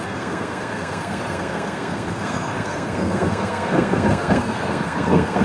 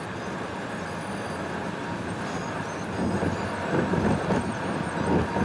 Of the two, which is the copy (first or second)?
first